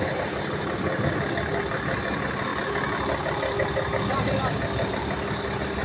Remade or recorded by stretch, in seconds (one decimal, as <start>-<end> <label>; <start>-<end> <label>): 0.0-5.8 recorded

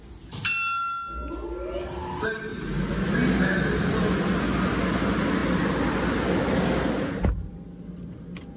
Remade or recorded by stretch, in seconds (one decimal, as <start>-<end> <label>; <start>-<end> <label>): 0.0-8.6 recorded

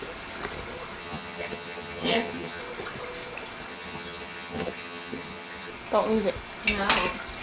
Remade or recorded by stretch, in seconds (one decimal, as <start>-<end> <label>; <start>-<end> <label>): 0.0-1.0 recorded; 1.0-2.6 remade; 2.6-3.7 recorded; 3.7-5.7 remade; 5.7-7.4 recorded

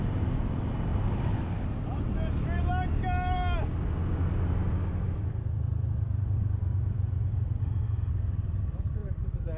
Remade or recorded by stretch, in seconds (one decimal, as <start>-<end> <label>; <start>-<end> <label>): 0.0-7.6 recorded; 7.6-8.1 remade; 8.1-9.6 recorded

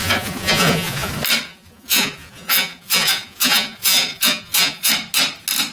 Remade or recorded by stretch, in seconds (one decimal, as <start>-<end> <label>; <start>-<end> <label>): 0.0-1.1 remade; 1.1-1.5 recorded; 1.5-4.9 remade; 4.9-5.7 recorded

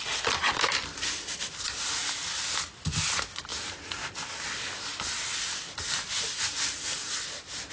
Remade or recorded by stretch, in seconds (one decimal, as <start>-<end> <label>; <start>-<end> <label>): 0.0-7.7 recorded

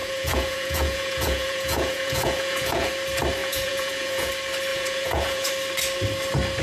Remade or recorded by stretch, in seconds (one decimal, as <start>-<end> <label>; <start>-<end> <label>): 0.0-2.9 remade; 2.9-3.4 recorded; 3.4-4.3 remade; 4.3-4.7 recorded; 4.7-5.5 remade; 5.5-6.6 recorded